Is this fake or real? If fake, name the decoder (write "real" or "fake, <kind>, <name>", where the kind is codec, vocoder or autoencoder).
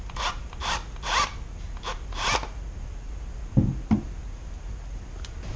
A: real